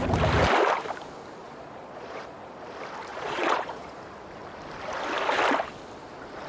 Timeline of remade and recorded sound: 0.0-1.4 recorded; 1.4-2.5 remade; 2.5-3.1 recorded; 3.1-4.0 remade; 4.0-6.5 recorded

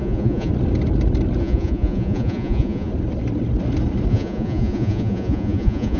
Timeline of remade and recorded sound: 0.0-0.5 remade; 0.5-1.4 recorded; 1.4-2.9 remade; 2.9-4.1 recorded; 4.1-6.0 remade

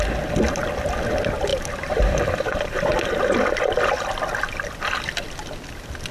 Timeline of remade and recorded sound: 0.0-1.5 recorded; 1.5-5.0 remade; 5.0-6.1 recorded

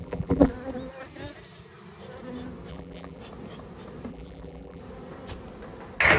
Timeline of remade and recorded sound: 0.0-0.5 remade; 0.5-2.7 recorded; 2.7-3.2 remade; 3.2-4.1 recorded; 4.1-4.8 remade; 4.8-6.2 recorded

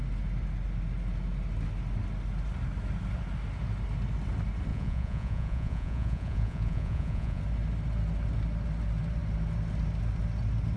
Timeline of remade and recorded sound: 0.0-4.7 recorded; 4.7-7.4 remade; 7.4-10.8 recorded

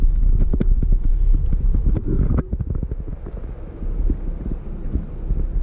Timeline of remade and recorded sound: 0.0-1.1 recorded; 1.1-1.9 remade; 1.9-5.6 recorded

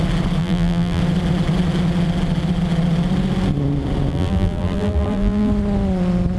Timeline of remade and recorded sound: 0.0-0.4 recorded; 0.4-1.0 remade; 1.0-4.1 recorded; 4.1-5.5 remade; 5.5-6.4 recorded

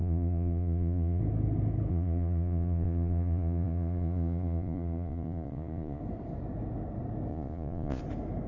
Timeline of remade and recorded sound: 0.0-1.2 remade; 1.2-1.9 recorded; 1.9-6.0 remade; 6.0-7.3 recorded; 7.3-8.0 remade; 8.0-8.5 recorded